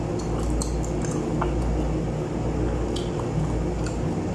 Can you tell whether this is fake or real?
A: real